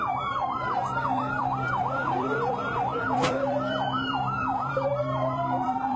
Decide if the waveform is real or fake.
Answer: fake